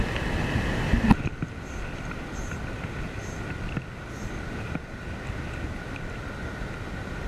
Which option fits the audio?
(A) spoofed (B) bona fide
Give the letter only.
B